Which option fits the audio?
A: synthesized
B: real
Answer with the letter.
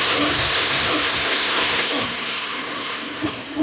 A